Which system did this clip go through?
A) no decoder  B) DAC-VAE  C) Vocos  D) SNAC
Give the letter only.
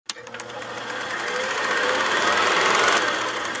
A